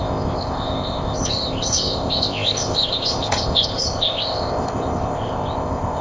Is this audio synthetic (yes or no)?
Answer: yes